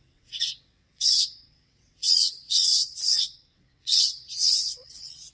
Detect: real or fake fake